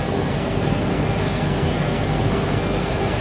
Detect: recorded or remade remade